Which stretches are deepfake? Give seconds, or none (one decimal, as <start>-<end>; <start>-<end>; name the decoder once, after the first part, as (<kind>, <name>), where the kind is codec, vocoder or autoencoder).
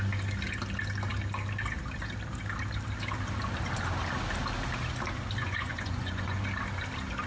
5.4-6.4 (vocoder, Vocos)